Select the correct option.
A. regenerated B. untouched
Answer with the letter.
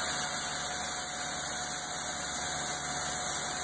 B